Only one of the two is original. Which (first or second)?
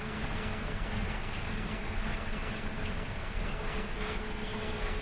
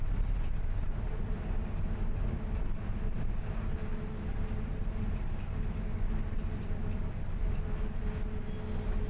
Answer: second